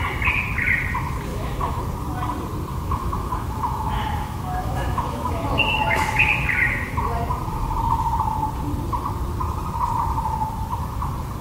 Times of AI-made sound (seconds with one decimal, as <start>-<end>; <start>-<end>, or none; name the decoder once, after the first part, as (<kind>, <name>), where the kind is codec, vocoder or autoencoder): 1.3-1.8 (autoencoder, DAC-VAE); 2.7-6.2